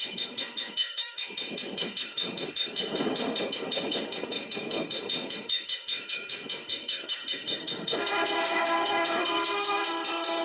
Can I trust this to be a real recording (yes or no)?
no